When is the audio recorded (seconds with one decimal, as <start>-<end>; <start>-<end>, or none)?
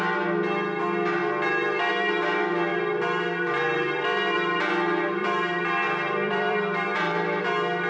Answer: 0.0-2.7; 7.4-7.9